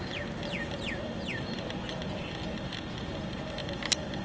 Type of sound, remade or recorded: recorded